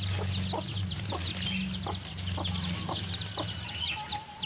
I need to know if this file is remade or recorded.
recorded